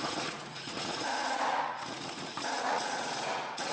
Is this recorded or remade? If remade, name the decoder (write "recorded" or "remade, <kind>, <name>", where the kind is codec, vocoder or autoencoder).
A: remade, vocoder, Vocos